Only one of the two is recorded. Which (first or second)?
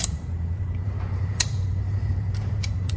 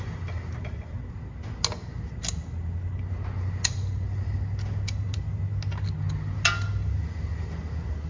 second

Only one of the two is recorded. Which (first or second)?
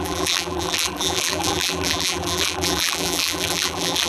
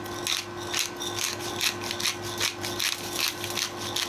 second